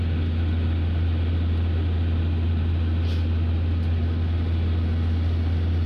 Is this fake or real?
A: real